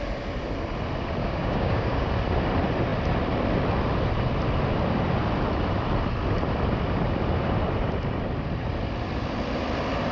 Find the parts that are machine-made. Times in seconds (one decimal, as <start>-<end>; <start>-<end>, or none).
1.2-2.1

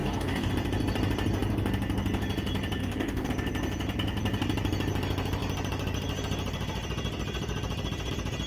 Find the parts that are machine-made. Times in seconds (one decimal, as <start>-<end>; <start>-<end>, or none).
0.0-0.5; 2.8-3.3